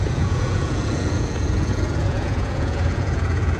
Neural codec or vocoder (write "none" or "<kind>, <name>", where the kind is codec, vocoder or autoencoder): vocoder, Vocos